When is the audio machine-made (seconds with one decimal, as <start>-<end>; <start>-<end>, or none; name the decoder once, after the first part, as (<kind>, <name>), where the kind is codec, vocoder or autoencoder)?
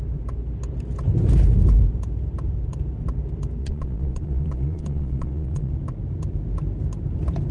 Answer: 3.6-5.7 (vocoder, Vocos)